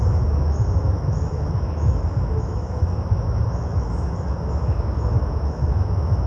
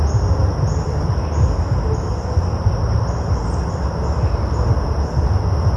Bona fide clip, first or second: second